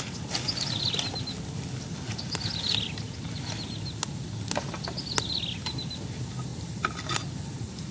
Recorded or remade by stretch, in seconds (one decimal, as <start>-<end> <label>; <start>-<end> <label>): 0.0-7.9 recorded